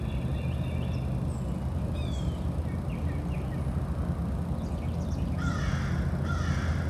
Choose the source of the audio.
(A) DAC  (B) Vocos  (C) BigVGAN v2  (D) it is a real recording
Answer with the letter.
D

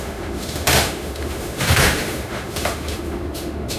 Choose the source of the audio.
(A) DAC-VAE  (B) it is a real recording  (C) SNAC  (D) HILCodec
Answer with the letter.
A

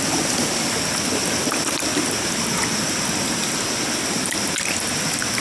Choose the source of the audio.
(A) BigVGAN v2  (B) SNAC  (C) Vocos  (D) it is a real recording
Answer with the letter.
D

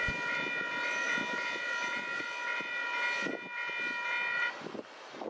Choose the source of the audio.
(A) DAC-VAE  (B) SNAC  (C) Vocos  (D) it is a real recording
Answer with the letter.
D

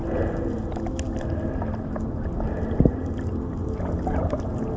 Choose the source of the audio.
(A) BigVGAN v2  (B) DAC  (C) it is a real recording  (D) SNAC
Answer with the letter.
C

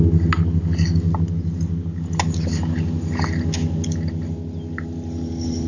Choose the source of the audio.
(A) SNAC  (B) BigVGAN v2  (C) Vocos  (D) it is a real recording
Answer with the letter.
D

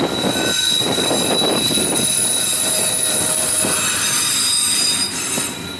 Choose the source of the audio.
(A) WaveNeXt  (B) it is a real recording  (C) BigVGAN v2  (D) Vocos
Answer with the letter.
C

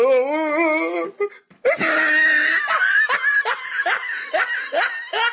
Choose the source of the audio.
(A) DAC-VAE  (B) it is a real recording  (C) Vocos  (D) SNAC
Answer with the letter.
B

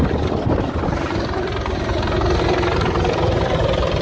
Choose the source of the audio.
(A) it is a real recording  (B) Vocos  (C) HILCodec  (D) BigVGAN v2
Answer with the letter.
A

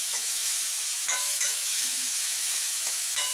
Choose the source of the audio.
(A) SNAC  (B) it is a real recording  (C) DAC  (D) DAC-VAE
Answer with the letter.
D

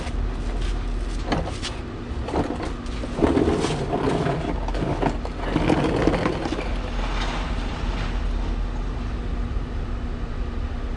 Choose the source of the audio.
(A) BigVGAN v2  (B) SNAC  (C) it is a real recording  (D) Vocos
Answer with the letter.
C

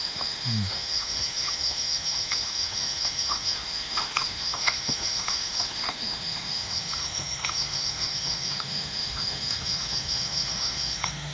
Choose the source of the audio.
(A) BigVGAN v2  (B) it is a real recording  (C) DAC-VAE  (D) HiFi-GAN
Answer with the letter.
C